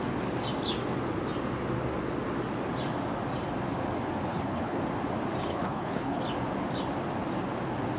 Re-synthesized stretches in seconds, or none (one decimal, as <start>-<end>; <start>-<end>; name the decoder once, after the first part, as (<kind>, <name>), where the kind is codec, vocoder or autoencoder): 4.3-4.8 (codec, HILCodec); 5.5-6.2